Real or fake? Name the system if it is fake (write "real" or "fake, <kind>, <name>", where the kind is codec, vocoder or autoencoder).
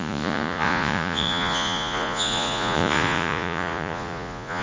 fake, vocoder, Vocos